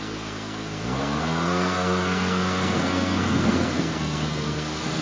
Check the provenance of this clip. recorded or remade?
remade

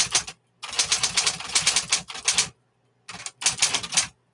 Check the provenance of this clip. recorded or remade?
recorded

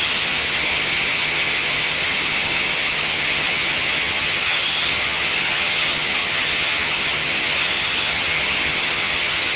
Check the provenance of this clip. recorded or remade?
remade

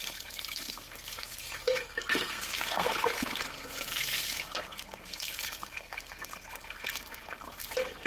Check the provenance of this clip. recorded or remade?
remade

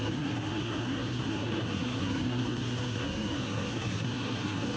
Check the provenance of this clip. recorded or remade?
remade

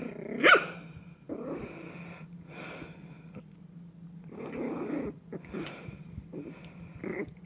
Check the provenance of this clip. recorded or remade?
remade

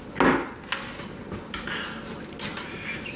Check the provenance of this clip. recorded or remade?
recorded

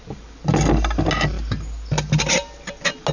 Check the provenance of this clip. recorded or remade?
recorded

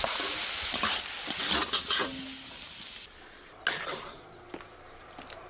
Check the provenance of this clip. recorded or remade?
recorded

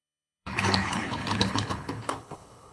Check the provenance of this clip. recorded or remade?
remade